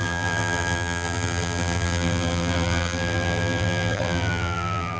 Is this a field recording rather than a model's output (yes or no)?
no